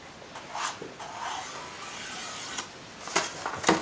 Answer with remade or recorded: recorded